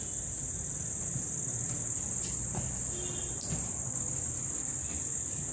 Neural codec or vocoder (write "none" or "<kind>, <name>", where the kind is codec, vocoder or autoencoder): none